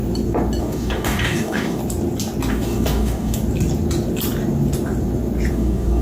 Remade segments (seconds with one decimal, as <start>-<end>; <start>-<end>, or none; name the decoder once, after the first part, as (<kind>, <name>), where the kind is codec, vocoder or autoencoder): 0.6-1.8 (codec, DAC); 2.5-3.4; 5.5-6.0